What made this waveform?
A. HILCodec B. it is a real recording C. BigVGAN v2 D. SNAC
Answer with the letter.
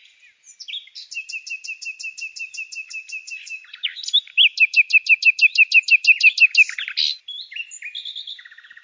B